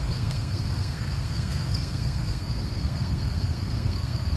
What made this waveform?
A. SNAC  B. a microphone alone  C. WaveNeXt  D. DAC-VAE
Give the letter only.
A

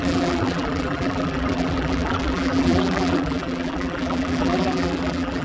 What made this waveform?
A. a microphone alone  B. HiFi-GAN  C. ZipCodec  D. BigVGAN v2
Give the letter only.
D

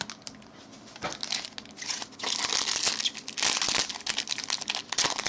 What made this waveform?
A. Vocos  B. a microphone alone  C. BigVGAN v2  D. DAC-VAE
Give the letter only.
B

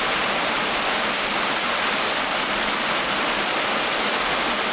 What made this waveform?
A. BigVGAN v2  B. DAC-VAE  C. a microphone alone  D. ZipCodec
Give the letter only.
C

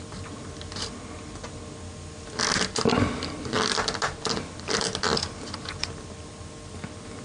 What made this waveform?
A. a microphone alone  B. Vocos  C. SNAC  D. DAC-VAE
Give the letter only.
A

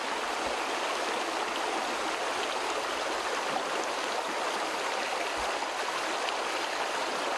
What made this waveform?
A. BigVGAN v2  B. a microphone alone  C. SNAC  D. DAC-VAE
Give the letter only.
B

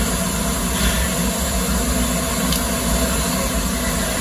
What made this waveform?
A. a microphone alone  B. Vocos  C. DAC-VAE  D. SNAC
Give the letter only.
A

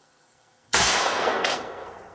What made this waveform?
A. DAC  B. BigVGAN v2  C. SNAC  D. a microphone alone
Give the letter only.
C